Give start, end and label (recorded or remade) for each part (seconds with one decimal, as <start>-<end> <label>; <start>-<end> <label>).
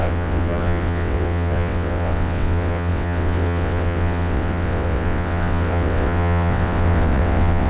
0.0-7.7 remade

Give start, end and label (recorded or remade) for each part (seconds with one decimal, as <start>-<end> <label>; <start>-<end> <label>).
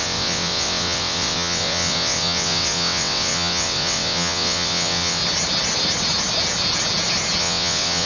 0.0-5.2 remade; 5.2-7.4 recorded; 7.4-8.1 remade